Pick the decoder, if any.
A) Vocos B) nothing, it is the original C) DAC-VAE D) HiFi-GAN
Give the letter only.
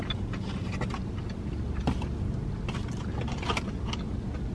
B